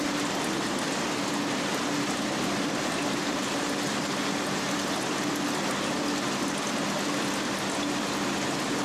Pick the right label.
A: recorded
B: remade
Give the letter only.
A